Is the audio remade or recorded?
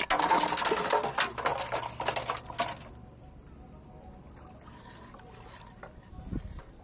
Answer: recorded